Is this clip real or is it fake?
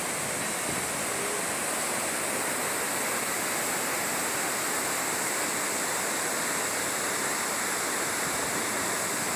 real